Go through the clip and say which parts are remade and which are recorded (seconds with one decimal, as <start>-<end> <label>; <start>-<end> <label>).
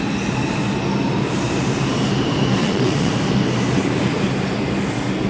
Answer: 0.0-2.6 recorded; 2.6-3.1 remade; 3.1-5.3 recorded